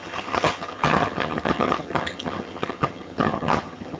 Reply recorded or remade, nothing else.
remade